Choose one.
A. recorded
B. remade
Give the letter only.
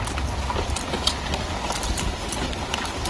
A